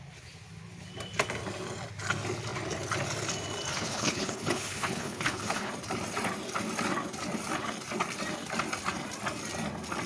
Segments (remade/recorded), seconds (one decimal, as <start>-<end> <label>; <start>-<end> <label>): 0.0-3.7 recorded; 3.7-5.7 remade; 5.7-10.1 recorded